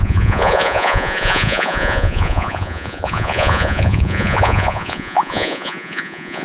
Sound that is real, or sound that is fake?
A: fake